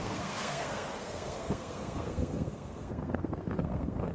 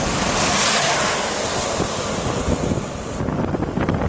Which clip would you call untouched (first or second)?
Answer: second